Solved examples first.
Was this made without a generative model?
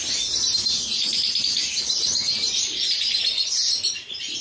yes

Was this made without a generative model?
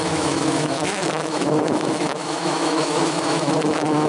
no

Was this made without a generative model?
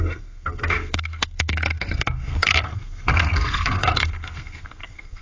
no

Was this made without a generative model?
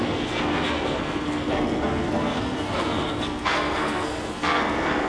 no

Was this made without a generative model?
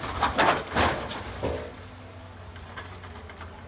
yes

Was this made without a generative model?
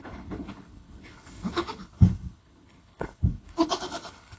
no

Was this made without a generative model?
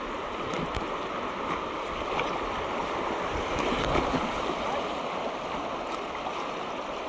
yes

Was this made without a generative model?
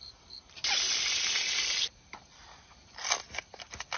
yes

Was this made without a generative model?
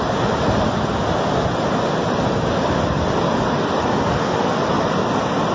yes